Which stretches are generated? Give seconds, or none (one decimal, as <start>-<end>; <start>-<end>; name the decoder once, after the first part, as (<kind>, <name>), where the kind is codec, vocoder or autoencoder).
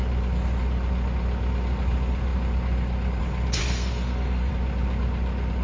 3.6-4.5 (codec, SNAC)